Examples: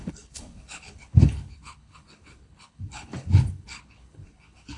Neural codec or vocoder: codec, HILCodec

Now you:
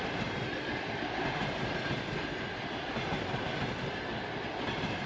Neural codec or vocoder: none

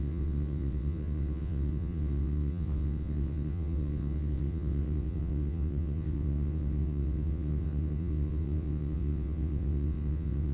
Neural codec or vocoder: vocoder, WaveNeXt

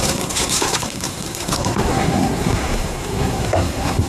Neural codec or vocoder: codec, SNAC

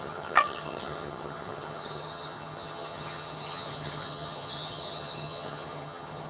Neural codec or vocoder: vocoder, HiFi-GAN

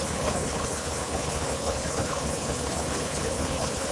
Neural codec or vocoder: codec, HILCodec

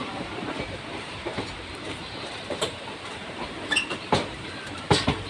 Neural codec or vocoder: vocoder, BigVGAN v2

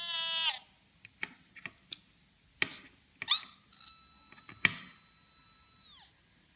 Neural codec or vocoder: none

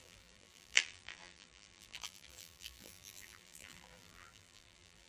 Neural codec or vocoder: vocoder, BigVGAN v2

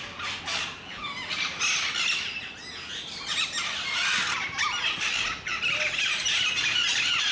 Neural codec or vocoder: none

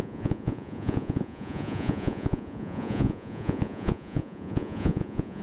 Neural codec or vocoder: vocoder, Vocos